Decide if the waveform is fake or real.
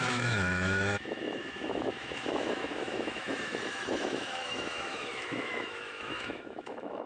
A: fake